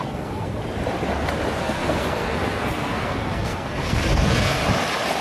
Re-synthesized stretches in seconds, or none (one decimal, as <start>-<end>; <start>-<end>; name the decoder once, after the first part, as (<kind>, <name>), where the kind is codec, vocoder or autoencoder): 0.0-0.6 (codec, SNAC); 1.6-4.6

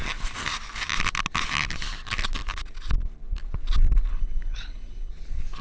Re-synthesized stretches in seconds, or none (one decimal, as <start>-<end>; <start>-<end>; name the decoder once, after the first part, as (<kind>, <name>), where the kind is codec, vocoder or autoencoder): 4.1-5.1 (codec, HILCodec)

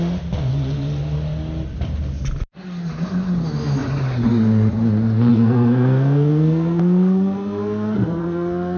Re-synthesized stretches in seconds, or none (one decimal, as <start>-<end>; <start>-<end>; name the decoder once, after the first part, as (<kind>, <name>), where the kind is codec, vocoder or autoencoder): 5.3-8.8 (codec, SNAC)

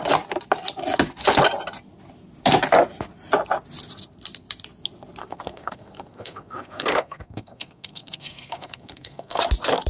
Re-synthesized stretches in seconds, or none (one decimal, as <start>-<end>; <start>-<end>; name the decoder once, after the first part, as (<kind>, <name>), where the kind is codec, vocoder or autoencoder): 5.2-9.4 (codec, SNAC)

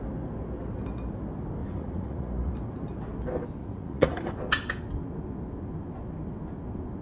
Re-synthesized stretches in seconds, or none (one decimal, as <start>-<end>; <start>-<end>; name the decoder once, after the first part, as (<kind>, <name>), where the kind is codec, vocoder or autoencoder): 1.6-2.5 (vocoder, Vocos); 3.6-4.3